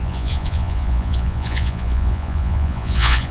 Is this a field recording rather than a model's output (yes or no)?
no